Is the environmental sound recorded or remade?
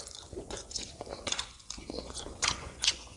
remade